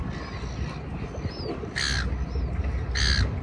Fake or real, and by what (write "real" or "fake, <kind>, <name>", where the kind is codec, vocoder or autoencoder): real